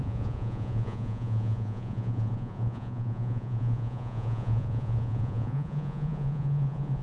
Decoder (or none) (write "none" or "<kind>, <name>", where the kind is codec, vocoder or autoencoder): vocoder, Vocos